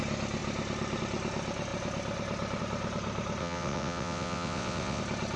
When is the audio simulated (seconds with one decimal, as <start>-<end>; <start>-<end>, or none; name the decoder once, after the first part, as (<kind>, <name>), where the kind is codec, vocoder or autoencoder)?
3.4-5.0 (vocoder, WaveNeXt)